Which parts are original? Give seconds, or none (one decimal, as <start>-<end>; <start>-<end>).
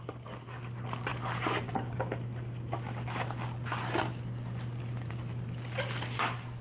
0.0-6.6